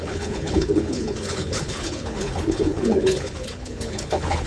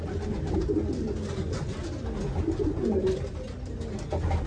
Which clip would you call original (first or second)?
second